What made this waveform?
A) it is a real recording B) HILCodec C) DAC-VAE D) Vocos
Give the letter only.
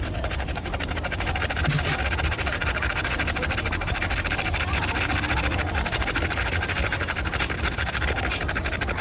A